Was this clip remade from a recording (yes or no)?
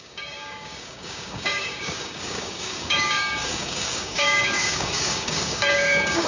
yes